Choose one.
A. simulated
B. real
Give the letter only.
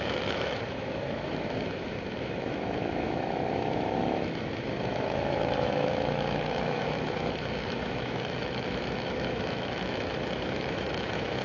A